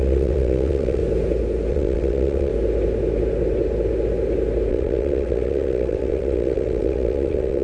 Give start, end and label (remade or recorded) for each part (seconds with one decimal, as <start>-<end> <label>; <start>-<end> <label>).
0.0-1.0 remade; 1.0-1.7 recorded; 1.7-2.5 remade; 2.5-4.7 recorded; 4.7-7.6 remade